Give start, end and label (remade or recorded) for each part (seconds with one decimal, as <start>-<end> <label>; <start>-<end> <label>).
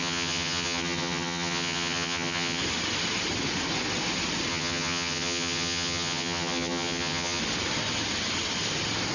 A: 0.0-2.6 remade; 2.6-4.5 recorded; 4.5-7.4 remade; 7.4-9.1 recorded